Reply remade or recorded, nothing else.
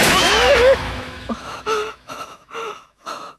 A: remade